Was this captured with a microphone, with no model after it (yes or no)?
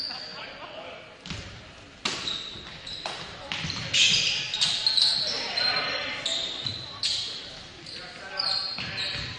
yes